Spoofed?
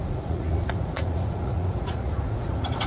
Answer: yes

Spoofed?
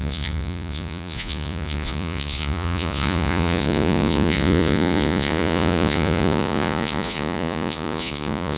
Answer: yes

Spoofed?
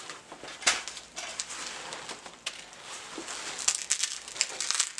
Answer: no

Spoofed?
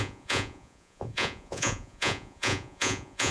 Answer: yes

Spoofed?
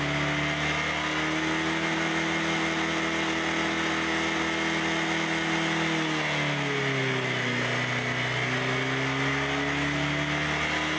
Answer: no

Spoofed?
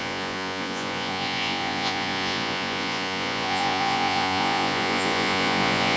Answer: yes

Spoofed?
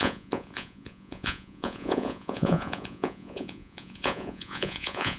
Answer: yes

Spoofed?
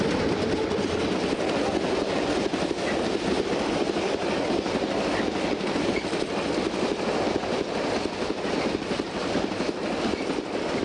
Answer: no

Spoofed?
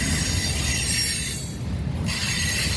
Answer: no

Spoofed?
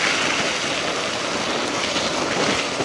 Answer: no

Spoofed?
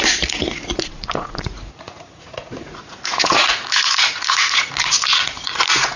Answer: yes